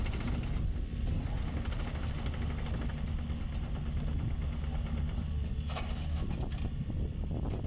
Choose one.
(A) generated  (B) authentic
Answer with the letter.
B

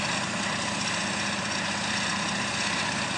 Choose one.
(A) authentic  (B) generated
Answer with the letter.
A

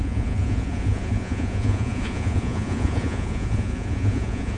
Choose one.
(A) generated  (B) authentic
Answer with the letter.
A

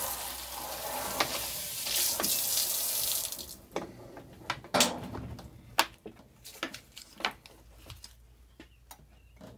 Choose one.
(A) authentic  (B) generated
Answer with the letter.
A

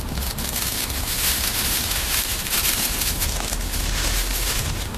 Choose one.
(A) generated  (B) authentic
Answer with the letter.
A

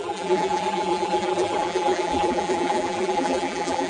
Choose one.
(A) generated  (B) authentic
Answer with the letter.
A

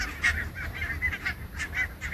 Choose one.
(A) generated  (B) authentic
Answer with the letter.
B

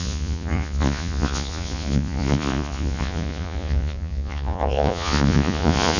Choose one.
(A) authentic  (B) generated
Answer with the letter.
B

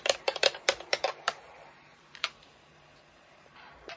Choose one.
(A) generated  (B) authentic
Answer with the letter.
A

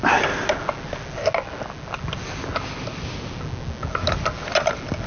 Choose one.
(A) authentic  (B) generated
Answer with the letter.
A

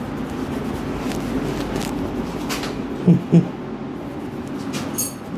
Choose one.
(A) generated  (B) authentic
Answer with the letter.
B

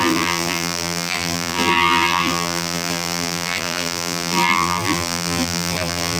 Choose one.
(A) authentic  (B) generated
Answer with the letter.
B